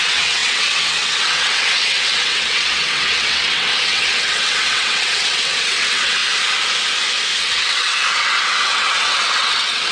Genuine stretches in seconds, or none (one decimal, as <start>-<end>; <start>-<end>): 6.2-7.4